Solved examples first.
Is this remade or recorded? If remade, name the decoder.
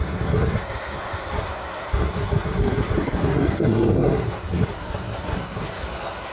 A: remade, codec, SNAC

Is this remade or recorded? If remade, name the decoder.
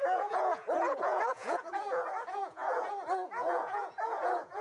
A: remade, vocoder, Vocos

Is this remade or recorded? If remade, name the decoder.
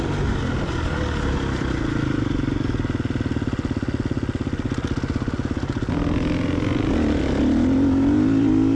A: recorded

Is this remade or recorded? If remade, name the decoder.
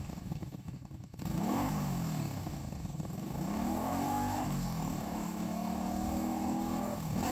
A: remade, codec, DAC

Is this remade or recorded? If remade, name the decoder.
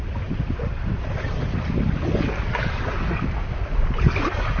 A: recorded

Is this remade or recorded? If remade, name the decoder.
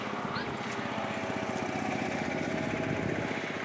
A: recorded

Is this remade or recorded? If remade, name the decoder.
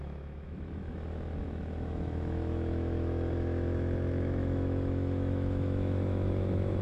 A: remade, autoencoder, DAC-VAE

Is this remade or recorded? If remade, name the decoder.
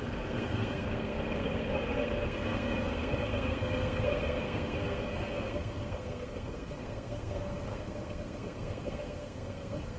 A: remade, codec, SNAC